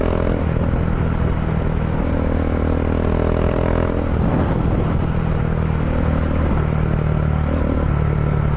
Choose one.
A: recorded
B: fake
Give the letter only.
A